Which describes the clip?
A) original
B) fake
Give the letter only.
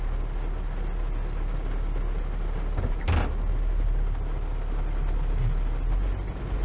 A